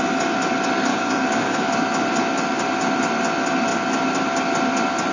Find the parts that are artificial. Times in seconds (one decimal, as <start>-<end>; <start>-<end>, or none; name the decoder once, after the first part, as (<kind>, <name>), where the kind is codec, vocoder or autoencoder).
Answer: 0.9-1.7 (codec, DAC)

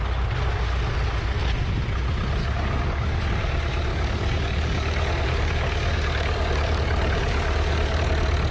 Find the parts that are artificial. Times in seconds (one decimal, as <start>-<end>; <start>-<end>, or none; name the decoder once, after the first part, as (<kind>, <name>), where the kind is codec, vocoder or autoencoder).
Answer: 2.4-3.2 (codec, DAC); 3.9-8.0

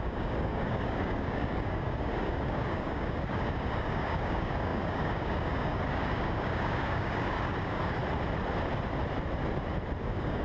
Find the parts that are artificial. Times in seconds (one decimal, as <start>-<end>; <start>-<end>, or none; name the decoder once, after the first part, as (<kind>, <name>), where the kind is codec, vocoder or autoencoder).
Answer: 0.0-8.0 (codec, DAC); 10.0-10.4

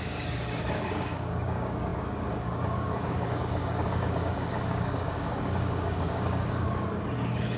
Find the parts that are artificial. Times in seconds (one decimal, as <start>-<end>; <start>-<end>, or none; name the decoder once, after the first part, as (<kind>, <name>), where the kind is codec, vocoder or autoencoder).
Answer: 0.0-7.6 (codec, DAC)

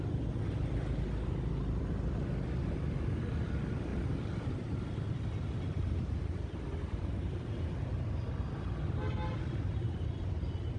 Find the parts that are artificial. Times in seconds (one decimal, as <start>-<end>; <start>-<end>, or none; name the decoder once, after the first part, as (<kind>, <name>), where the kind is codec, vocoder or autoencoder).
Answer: none

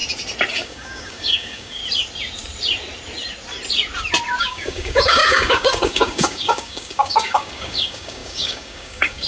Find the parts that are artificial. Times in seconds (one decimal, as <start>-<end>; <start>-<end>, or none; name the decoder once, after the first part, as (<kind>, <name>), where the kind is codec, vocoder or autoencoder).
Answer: 0.5-1.8 (codec, DAC); 4.4-9.3

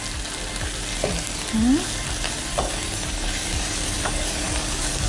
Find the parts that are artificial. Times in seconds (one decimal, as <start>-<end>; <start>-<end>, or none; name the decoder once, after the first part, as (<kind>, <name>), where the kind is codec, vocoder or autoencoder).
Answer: 2.5-5.1 (codec, DAC)

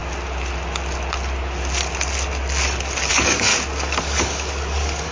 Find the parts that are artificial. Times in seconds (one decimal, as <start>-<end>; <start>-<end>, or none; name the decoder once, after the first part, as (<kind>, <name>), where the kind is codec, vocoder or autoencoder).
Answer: 3.1-3.5 (codec, DAC); 4.0-5.1